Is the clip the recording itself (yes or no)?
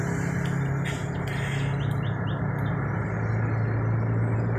yes